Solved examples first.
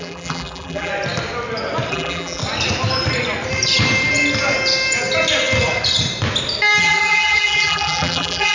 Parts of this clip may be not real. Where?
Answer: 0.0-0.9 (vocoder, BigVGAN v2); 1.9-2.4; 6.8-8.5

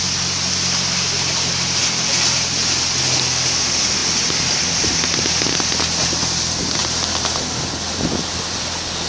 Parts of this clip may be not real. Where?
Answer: none

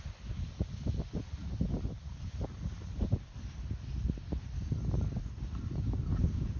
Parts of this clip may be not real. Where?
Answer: none

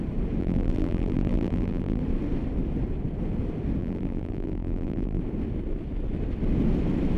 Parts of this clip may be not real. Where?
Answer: 0.4-2.0 (vocoder, BigVGAN v2); 3.8-5.2

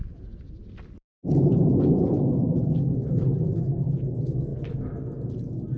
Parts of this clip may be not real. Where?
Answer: none